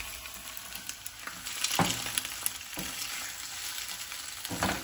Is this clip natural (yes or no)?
yes